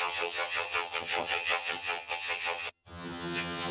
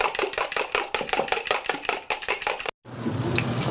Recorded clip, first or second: second